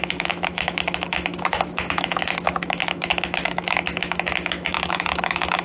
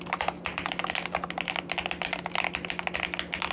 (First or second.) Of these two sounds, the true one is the second